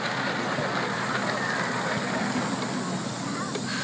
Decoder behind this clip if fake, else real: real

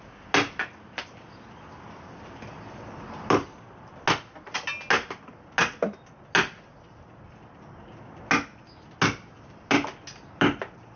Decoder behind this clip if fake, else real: real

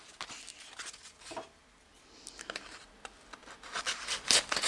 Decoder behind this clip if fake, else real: real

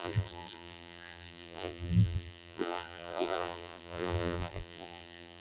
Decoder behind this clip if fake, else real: fake, vocoder, BigVGAN v2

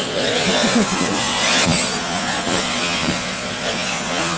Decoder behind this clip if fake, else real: fake, vocoder, Vocos